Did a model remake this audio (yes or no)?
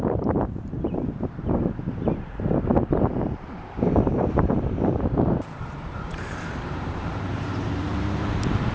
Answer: yes